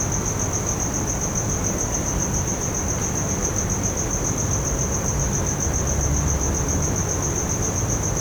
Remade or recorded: recorded